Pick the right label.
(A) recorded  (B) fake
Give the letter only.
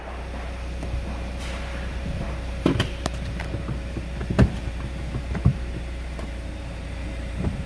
B